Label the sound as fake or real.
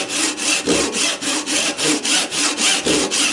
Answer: real